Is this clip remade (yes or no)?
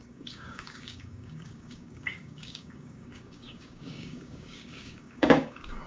yes